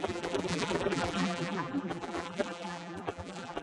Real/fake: fake